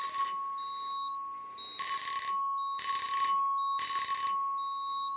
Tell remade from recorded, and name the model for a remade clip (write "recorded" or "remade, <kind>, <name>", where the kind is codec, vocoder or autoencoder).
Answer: recorded